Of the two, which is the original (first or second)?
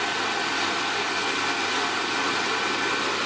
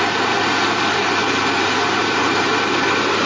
first